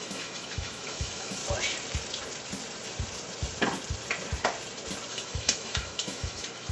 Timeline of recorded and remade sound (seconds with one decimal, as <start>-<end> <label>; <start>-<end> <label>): 0.0-1.4 remade; 1.4-5.1 recorded; 5.1-6.7 remade